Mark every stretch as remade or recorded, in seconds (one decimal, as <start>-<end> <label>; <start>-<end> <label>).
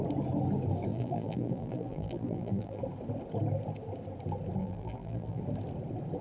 0.0-0.9 recorded; 0.9-2.8 remade; 2.8-4.6 recorded; 4.6-5.4 remade; 5.4-6.2 recorded